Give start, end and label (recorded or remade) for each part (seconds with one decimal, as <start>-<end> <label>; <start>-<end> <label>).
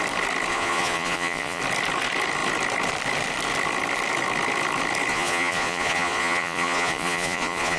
0.0-0.5 recorded; 0.5-1.6 remade; 1.6-5.1 recorded; 5.1-7.8 remade